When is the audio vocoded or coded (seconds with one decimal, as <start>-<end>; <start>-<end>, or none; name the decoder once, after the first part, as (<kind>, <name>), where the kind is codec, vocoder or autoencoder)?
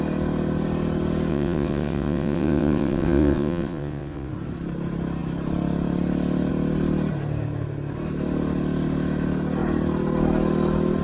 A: 1.3-4.3 (vocoder, WaveNeXt)